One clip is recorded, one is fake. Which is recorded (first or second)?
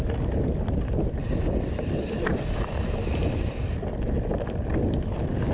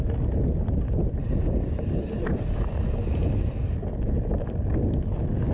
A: second